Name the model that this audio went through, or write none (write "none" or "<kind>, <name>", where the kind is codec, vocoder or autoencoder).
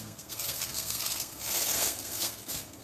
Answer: codec, SNAC